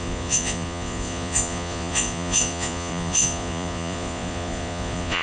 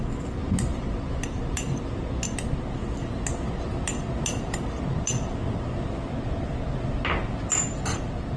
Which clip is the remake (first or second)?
first